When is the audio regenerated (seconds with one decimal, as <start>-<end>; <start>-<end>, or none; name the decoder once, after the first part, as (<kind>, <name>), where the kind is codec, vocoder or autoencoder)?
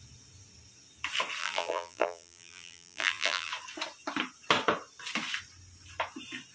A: 1.4-3.5 (vocoder, BigVGAN v2)